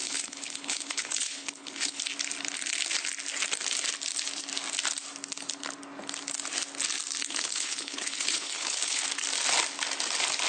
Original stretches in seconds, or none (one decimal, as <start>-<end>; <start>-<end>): 2.0-7.2; 9.0-10.5